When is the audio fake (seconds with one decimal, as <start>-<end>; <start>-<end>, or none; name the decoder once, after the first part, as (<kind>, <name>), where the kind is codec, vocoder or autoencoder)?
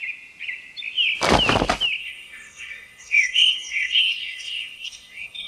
2.0-5.5 (codec, SNAC)